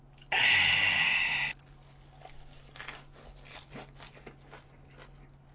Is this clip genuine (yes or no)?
yes